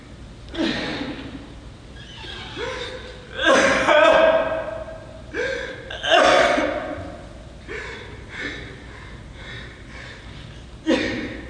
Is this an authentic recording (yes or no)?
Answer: yes